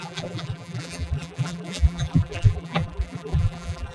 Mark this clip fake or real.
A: fake